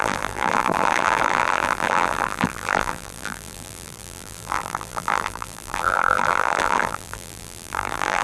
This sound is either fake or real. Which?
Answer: fake